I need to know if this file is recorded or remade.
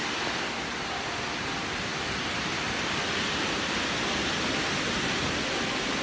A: recorded